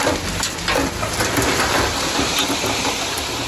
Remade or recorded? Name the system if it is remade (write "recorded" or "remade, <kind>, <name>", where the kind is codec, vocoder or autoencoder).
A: remade, vocoder, BigVGAN v2